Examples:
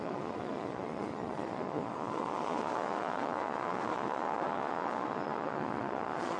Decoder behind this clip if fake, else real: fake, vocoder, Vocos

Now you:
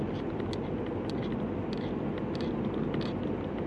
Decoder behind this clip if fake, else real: real